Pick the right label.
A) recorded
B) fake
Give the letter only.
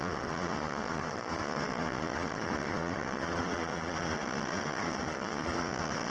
B